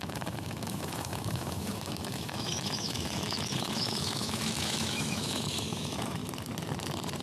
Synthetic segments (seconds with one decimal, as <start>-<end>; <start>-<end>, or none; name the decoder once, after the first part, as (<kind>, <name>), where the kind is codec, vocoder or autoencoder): 0.0-6.2 (autoencoder, DAC-VAE)